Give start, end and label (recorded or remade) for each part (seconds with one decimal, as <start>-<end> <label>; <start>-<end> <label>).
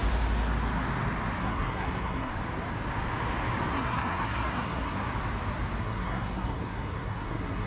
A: 0.0-1.4 recorded; 1.4-2.3 remade; 2.3-3.7 recorded; 3.7-5.1 remade; 5.1-5.8 recorded; 5.8-7.7 remade